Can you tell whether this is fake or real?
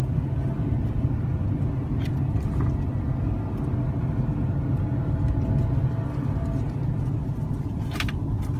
real